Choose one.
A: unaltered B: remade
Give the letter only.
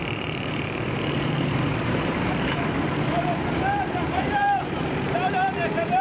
B